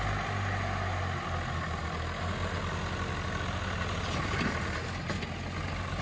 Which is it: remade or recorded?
recorded